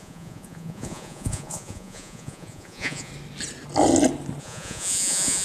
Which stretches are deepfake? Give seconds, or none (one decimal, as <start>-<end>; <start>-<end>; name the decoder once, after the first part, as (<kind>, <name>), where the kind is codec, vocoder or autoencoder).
0.0-3.1 (vocoder, Vocos); 4.4-5.4